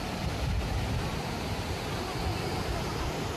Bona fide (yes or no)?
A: no